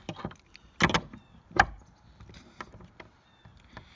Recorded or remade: recorded